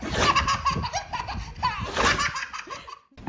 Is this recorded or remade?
recorded